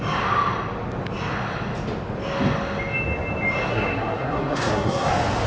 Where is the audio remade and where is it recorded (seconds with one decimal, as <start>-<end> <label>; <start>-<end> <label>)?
0.0-3.7 recorded; 3.7-5.1 remade; 5.1-5.5 recorded